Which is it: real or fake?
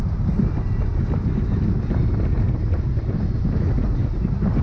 real